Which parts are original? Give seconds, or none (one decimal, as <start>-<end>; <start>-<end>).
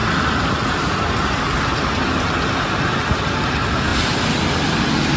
0.0-5.2